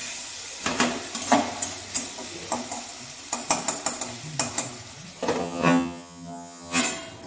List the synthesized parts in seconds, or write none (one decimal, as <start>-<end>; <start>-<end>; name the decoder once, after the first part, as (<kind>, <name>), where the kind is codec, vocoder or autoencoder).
5.4-6.8 (vocoder, HiFi-GAN)